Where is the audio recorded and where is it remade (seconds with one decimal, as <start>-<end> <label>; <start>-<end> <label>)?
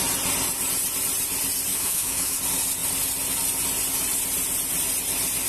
0.0-1.7 recorded; 1.7-2.4 remade; 2.4-5.5 recorded